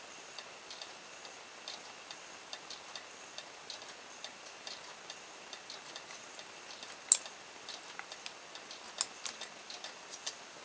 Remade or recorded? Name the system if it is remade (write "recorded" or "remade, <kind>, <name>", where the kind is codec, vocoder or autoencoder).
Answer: recorded